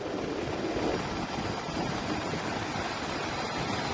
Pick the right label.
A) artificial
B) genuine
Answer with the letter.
B